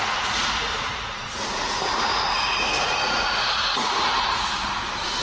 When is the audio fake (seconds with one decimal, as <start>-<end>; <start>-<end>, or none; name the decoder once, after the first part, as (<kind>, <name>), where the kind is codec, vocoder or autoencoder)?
0.0-4.5 (vocoder, Vocos)

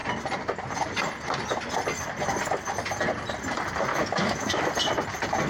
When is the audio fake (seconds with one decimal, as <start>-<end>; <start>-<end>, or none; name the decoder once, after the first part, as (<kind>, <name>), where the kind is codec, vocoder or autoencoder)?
3.9-4.7 (autoencoder, DAC-VAE)

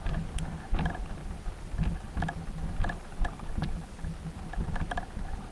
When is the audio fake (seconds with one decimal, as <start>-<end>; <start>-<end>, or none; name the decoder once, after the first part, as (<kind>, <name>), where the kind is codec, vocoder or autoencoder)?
1.2-4.5 (vocoder, BigVGAN v2)

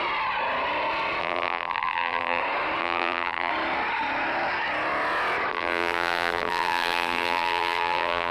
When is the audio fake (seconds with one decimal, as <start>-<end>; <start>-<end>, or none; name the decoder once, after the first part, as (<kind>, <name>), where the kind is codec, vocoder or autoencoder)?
1.2-2.4 (vocoder, BigVGAN v2); 2.8-3.5; 5.5-8.3

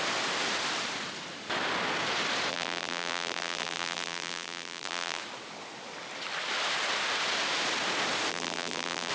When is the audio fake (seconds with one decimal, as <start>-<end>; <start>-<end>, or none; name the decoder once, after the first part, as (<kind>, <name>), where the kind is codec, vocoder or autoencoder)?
2.5-5.2 (vocoder, BigVGAN v2); 8.3-9.1

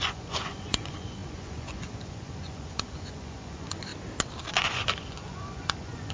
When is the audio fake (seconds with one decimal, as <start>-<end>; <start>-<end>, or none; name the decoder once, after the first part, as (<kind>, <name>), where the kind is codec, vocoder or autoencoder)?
0.0-3.9 (vocoder, Vocos); 4.5-6.1

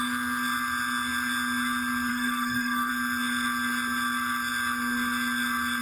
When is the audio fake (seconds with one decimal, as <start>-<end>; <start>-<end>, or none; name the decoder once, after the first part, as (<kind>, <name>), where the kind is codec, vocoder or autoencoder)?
2.1-2.9 (codec, SNAC)

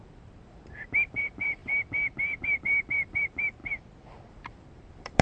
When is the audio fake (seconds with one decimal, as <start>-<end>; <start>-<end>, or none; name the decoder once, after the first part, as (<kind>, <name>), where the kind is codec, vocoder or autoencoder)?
0.0-1.6 (vocoder, BigVGAN v2); 2.6-3.6; 4.3-5.2